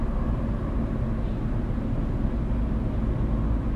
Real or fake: real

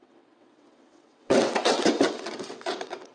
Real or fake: fake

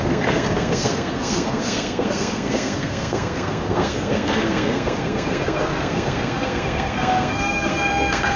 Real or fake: fake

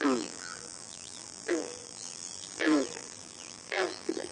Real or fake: fake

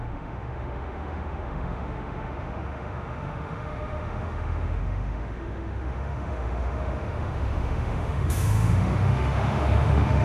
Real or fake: fake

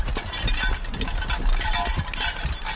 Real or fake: real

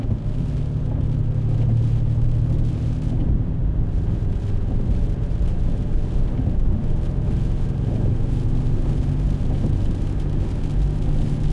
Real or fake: real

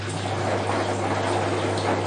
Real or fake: real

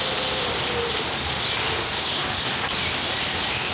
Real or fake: real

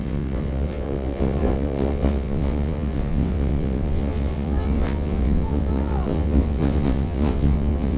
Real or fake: fake